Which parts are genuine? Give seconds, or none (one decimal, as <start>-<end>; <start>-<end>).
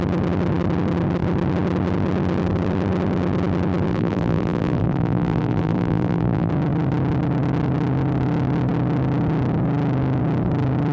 0.0-3.9; 6.5-10.9